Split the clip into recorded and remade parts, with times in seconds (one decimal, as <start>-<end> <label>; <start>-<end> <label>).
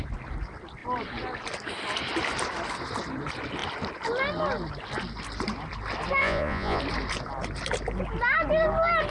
0.0-6.2 recorded; 6.2-6.8 remade; 6.8-9.1 recorded